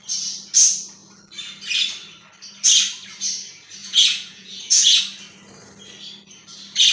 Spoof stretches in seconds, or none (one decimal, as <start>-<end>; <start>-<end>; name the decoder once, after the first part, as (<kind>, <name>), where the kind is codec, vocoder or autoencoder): 3.8-5.0 (vocoder, Vocos)